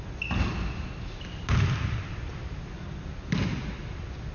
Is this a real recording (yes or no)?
yes